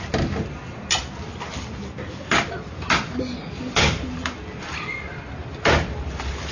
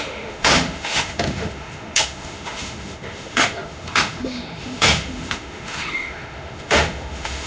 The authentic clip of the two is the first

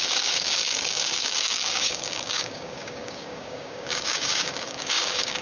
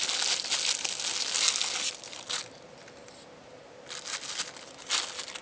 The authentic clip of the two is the second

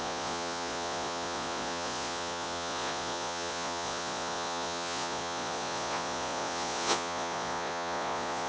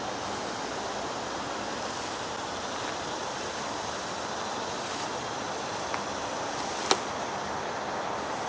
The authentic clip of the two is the second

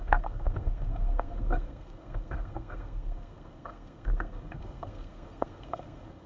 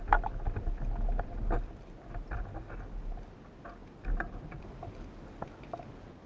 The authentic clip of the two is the second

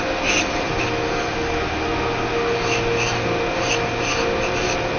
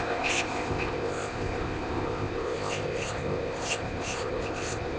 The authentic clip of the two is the first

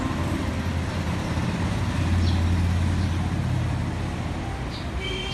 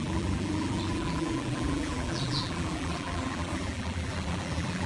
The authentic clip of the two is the first